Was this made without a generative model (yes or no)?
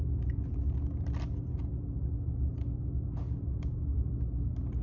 yes